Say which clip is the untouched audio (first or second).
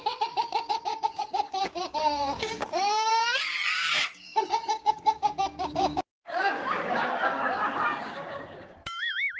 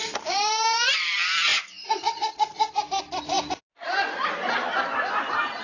second